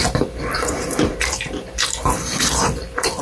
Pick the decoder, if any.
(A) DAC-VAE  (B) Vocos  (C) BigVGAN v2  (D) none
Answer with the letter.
C